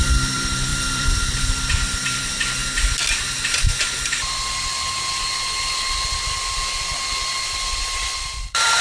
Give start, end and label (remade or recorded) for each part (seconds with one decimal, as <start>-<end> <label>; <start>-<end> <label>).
0.0-2.6 remade; 2.6-7.4 recorded; 7.4-8.8 remade

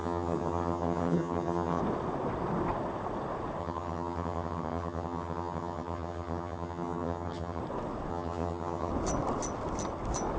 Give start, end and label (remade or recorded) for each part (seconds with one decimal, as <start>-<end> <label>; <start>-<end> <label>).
0.0-1.8 remade; 1.8-3.6 recorded; 3.6-7.6 remade; 7.6-8.1 recorded; 8.1-8.9 remade; 8.9-10.4 recorded

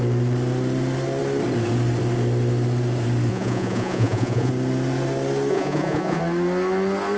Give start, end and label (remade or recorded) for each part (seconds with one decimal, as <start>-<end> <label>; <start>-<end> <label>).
0.0-3.3 recorded; 3.3-4.5 remade; 4.5-5.5 recorded; 5.5-6.2 remade; 6.2-7.2 recorded

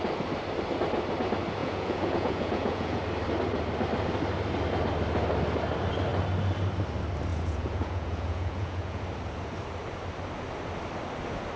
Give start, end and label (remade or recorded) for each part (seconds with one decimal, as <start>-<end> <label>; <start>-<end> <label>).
0.0-1.6 recorded; 1.6-3.0 remade; 3.0-7.3 recorded; 7.3-9.0 remade; 9.0-11.6 recorded